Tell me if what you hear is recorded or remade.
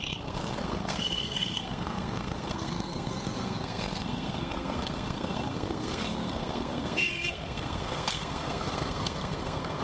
remade